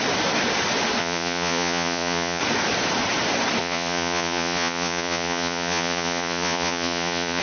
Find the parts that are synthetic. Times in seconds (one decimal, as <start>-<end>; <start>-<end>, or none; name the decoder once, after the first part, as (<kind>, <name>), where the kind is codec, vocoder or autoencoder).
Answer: 1.0-2.4 (vocoder, Vocos); 3.6-7.4